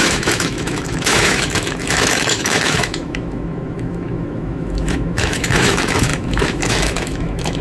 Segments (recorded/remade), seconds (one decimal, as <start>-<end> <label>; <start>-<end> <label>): 0.0-7.6 remade

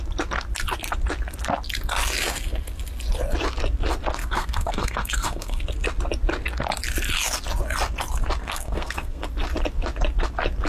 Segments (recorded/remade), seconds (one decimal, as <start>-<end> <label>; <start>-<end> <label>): 0.0-4.2 recorded; 4.2-5.6 remade; 5.6-8.4 recorded; 8.4-9.2 remade; 9.2-10.7 recorded